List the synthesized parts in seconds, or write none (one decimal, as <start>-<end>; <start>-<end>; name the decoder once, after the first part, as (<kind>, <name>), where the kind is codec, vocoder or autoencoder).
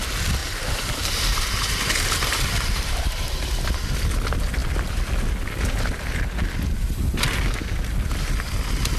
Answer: 0.4-3.4 (vocoder, BigVGAN v2)